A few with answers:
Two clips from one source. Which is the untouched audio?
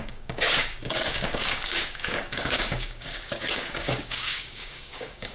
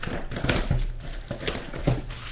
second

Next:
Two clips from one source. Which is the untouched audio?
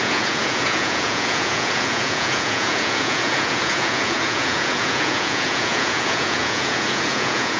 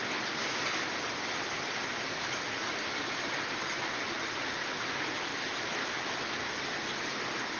second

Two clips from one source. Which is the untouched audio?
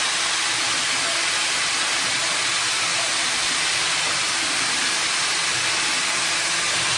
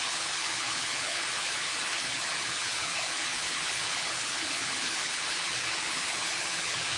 first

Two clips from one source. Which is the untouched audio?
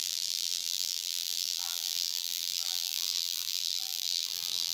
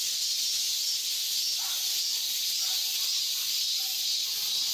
second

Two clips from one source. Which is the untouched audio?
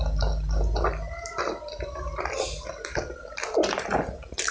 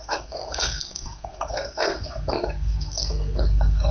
first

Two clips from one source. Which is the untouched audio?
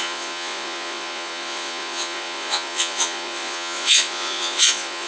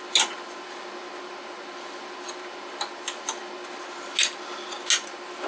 second